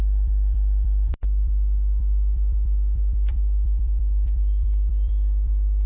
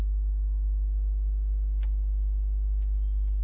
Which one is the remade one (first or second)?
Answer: first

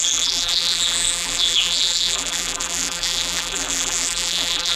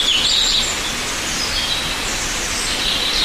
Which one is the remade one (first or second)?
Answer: first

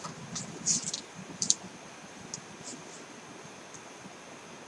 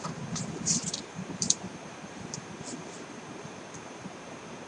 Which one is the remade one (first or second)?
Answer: second